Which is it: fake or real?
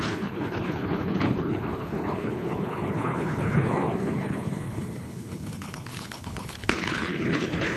fake